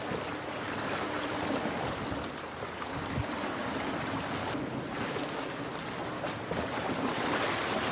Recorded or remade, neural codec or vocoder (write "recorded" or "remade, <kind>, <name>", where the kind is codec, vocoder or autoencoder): recorded